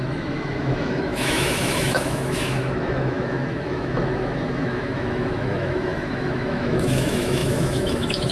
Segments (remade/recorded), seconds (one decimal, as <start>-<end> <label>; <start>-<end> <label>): 0.0-8.3 remade